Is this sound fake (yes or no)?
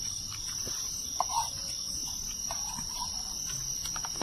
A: no